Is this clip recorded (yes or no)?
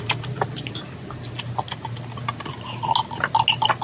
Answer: yes